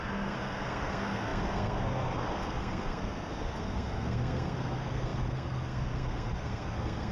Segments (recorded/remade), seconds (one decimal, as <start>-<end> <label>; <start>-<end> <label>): 0.0-7.1 remade